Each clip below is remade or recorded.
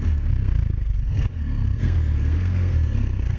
remade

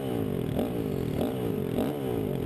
recorded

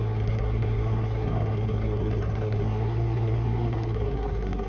remade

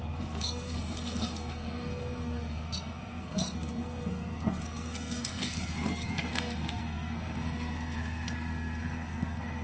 remade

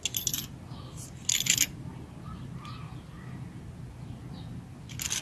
recorded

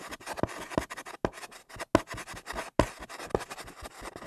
recorded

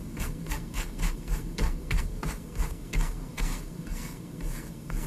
remade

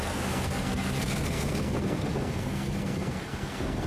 remade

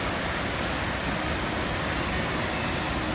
recorded